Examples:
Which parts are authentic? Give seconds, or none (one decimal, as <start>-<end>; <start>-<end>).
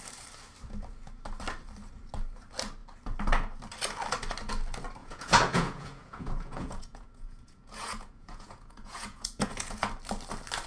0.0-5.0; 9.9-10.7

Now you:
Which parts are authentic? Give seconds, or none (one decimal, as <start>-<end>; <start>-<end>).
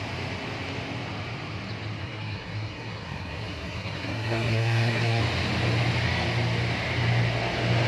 0.0-2.0; 5.2-7.9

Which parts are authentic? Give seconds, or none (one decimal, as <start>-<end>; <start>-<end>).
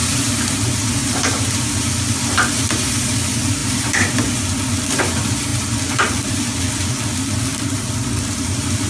0.6-1.0; 1.7-3.6; 4.4-8.9